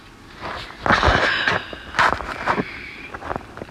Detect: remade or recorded recorded